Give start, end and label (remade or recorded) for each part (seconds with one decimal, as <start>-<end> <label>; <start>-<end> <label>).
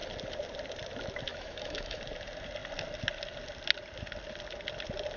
0.0-1.3 recorded; 1.3-2.0 remade; 2.0-5.2 recorded